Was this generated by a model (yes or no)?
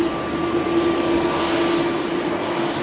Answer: no